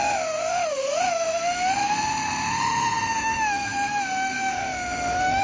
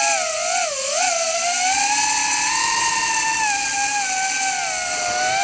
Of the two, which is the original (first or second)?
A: second